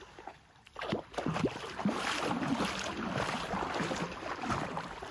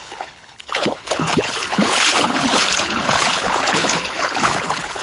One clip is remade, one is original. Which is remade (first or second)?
second